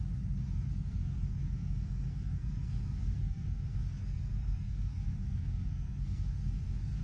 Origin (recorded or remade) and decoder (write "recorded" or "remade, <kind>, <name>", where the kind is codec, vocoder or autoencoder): remade, codec, SNAC